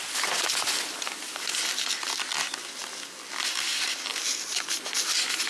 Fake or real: real